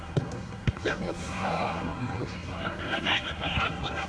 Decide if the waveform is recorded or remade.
remade